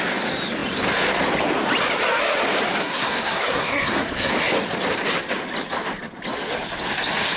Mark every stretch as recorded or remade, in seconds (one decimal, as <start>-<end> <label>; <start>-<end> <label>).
0.0-2.8 recorded; 2.8-4.3 remade; 4.3-7.4 recorded

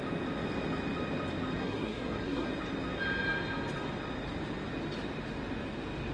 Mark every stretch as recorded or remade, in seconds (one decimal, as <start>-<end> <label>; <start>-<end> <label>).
0.0-1.6 recorded; 1.6-2.5 remade; 2.5-6.1 recorded

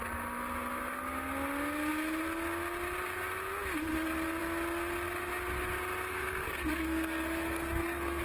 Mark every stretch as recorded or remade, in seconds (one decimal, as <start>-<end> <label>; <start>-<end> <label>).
0.0-6.1 recorded; 6.1-8.2 remade